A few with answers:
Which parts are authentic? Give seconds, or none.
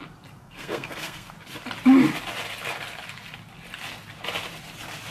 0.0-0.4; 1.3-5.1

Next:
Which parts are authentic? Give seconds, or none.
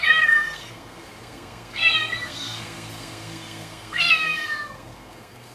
none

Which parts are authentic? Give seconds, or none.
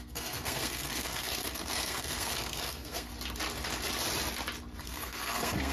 3.1-4.8